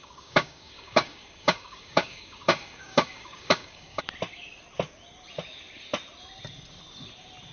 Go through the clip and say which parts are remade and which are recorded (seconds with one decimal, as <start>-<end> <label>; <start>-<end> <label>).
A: 0.0-4.0 remade; 4.0-7.5 recorded